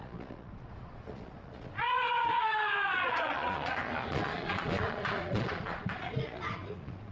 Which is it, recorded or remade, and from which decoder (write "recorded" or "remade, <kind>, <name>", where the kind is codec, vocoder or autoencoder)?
remade, vocoder, Vocos